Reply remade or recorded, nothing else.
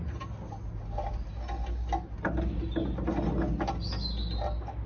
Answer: recorded